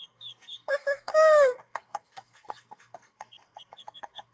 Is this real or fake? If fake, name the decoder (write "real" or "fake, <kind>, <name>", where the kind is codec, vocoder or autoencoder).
fake, codec, SNAC